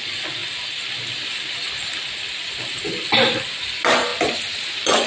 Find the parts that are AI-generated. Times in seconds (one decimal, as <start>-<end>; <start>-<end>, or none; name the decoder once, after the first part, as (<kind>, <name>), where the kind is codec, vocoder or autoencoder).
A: none